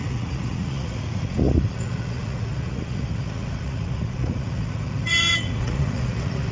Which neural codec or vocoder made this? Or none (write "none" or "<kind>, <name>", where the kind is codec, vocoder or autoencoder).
vocoder, Vocos